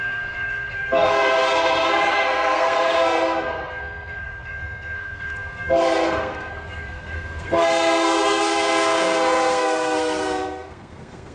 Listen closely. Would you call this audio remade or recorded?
remade